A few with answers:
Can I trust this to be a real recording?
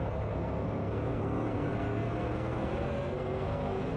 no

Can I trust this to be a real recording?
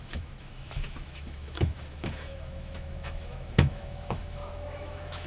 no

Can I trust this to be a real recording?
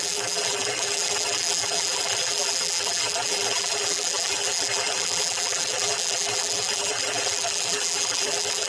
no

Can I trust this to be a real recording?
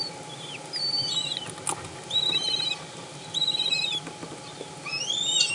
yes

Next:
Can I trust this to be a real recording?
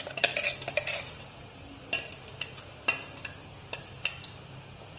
yes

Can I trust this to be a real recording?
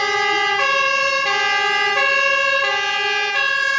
yes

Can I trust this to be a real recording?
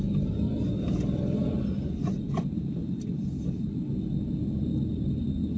yes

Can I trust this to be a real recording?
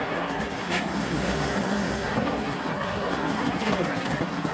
no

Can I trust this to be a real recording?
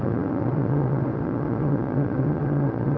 no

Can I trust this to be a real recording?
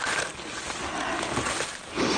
yes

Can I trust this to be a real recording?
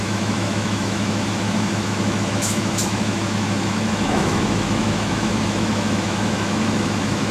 no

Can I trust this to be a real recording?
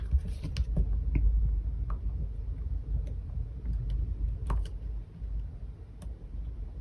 yes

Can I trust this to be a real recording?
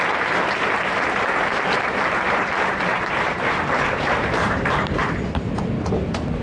no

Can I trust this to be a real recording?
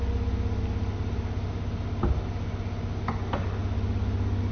yes